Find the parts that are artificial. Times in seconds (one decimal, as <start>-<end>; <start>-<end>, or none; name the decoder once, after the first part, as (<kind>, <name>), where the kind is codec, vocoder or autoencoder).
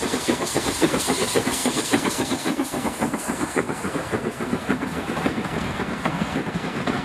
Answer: 0.0-7.0 (codec, SNAC)